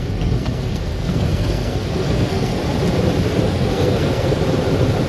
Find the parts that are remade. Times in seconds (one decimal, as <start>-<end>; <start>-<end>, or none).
0.0-2.6; 3.3-4.4